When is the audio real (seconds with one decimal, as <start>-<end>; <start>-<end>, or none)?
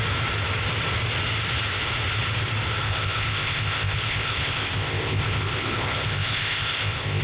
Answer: 0.0-2.8